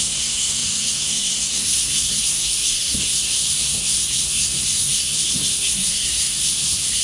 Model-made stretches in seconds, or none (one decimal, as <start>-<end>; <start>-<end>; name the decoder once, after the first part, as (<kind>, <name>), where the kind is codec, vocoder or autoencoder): 0.0-7.0 (codec, SNAC)